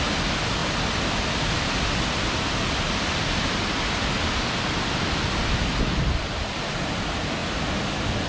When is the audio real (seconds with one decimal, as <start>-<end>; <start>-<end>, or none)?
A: 0.0-8.3